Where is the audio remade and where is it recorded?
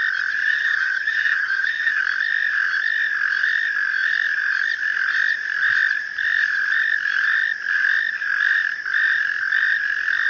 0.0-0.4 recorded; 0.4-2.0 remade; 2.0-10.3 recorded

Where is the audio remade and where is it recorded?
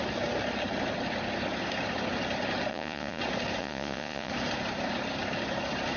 0.0-2.7 recorded; 2.7-3.2 remade; 3.2-3.6 recorded; 3.6-4.3 remade; 4.3-6.0 recorded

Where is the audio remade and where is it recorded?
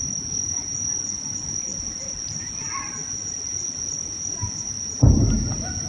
0.0-5.9 recorded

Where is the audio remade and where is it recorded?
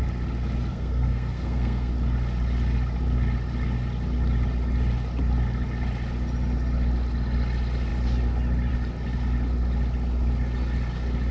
0.0-0.7 recorded; 0.7-1.9 remade; 1.9-11.3 recorded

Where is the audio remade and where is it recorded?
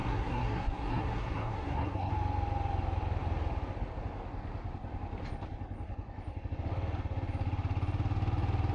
0.0-2.1 remade; 2.1-8.7 recorded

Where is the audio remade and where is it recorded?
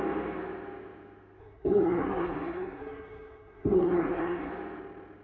0.0-1.4 recorded; 1.4-4.5 remade; 4.5-5.2 recorded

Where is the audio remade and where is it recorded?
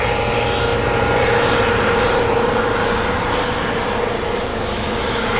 0.0-4.5 recorded; 4.5-5.4 remade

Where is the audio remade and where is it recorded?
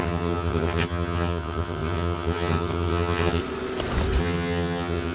0.0-3.4 remade; 3.4-4.2 recorded; 4.2-5.1 remade